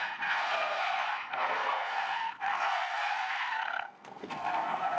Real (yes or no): no